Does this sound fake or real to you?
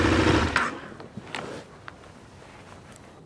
real